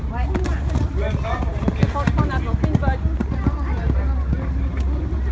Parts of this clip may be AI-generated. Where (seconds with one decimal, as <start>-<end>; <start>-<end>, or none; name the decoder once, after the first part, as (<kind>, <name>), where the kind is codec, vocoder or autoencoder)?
none